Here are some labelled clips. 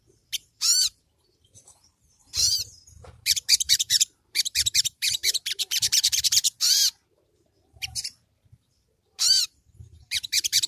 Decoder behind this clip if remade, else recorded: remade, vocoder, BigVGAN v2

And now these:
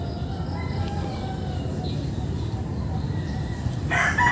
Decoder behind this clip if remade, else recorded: remade, vocoder, BigVGAN v2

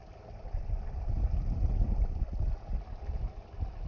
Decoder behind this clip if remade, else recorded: recorded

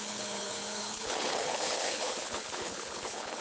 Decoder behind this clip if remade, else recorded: remade, codec, HILCodec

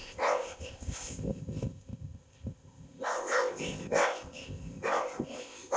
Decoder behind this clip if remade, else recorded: remade, codec, ZipCodec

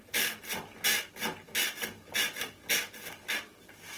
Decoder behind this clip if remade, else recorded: recorded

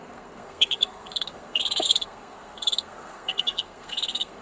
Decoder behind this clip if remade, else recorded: remade, codec, SNAC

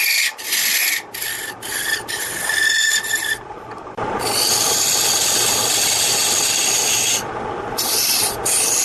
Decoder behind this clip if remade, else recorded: remade, vocoder, BigVGAN v2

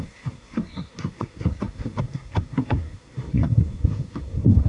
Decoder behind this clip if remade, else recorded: remade, codec, SNAC